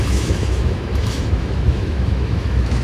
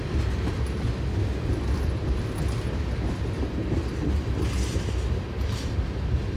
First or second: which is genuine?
second